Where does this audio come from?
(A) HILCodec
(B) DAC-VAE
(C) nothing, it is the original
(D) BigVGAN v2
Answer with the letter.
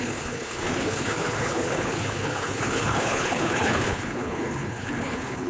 A